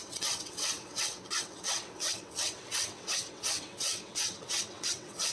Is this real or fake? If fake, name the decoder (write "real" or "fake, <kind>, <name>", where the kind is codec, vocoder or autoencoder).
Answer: fake, vocoder, WaveNeXt